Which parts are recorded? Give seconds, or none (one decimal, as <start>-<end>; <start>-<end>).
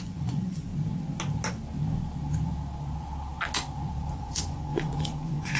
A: 0.7-4.1